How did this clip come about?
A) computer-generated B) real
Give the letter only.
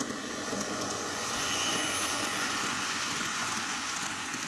A